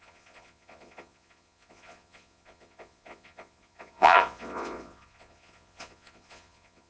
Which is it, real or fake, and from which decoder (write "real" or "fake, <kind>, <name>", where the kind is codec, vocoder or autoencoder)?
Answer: fake, vocoder, Vocos